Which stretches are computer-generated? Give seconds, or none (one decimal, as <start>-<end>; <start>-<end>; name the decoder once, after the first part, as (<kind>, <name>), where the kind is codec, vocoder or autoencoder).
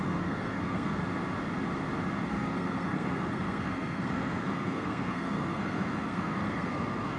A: 0.0-1.0 (codec, SNAC); 2.3-7.2